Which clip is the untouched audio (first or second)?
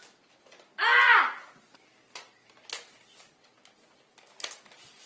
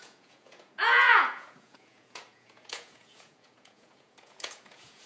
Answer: first